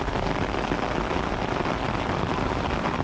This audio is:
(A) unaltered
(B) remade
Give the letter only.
A